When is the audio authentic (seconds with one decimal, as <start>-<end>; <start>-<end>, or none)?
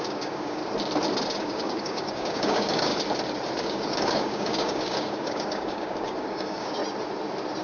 0.6-1.4; 2.9-3.6; 6.8-7.6